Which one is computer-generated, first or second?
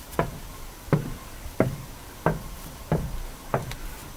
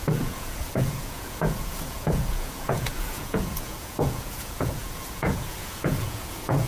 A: second